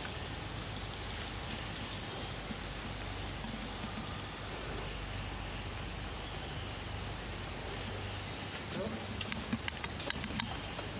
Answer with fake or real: real